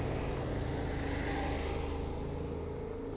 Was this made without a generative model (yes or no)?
yes